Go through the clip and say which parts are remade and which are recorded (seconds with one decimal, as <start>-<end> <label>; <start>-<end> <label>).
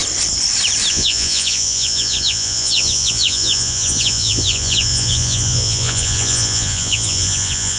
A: 0.0-0.9 recorded; 0.9-7.8 remade